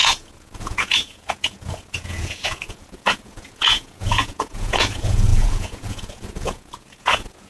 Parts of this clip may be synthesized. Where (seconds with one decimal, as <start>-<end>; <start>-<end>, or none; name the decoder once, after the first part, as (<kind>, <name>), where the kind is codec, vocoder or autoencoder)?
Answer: 0.0-7.5 (vocoder, Vocos)